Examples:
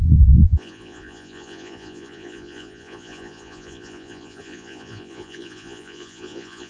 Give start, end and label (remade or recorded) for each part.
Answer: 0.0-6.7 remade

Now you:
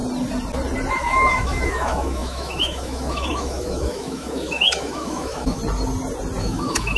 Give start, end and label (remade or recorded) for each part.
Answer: 0.0-0.9 recorded; 0.9-5.6 remade; 5.6-6.4 recorded; 6.4-7.0 remade